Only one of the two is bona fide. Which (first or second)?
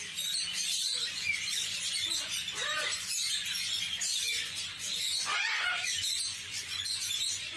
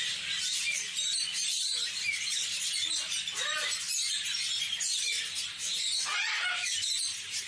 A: second